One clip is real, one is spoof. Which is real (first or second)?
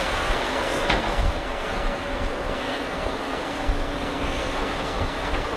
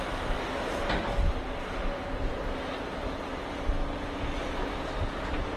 second